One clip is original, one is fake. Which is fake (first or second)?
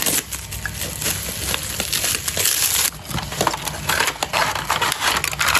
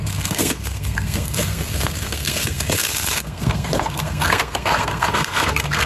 second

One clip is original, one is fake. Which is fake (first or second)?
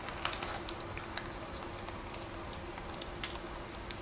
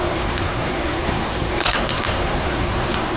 second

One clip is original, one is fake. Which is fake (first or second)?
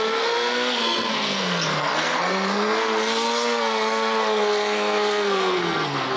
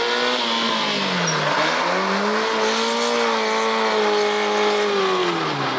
first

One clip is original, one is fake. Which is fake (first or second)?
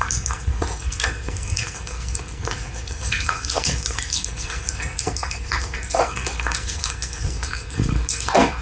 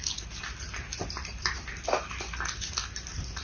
first